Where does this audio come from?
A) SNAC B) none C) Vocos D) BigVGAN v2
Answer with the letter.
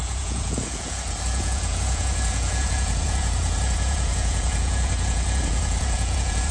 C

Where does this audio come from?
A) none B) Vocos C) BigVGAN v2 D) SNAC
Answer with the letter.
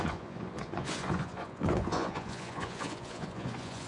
B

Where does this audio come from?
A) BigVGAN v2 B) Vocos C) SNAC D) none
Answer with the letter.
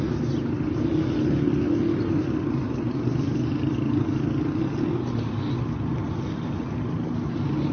D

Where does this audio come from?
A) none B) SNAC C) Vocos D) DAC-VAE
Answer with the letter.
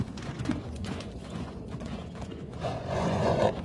C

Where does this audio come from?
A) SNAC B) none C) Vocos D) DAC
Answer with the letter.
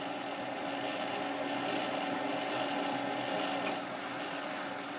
B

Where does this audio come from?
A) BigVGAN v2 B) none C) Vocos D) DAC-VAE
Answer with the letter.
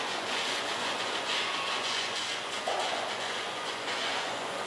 C